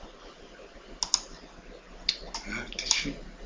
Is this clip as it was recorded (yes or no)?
yes